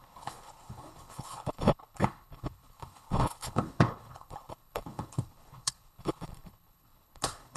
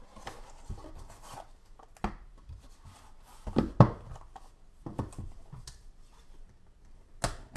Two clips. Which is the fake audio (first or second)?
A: first